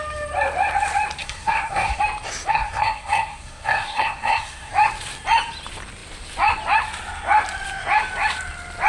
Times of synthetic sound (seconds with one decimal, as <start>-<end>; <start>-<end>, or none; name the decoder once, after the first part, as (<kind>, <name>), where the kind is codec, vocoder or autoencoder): 1.2-2.0 (codec, SNAC); 2.5-4.7